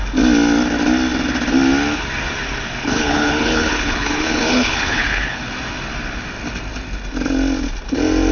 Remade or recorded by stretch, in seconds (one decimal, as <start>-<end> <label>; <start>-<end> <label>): 0.0-2.8 recorded; 2.8-5.4 remade; 5.4-8.3 recorded